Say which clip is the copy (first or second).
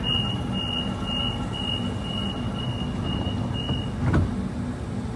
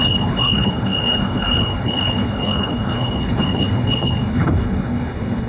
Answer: second